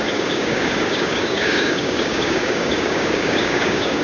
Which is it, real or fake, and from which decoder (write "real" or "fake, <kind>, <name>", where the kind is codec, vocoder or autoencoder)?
fake, codec, DAC